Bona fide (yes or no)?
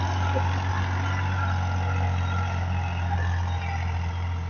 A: yes